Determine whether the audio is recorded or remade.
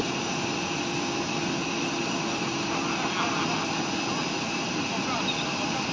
recorded